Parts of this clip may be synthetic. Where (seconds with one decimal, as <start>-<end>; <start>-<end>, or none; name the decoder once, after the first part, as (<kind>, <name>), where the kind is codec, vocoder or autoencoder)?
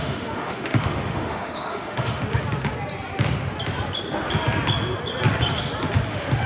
0.0-2.2 (autoencoder, DAC-VAE); 6.1-6.5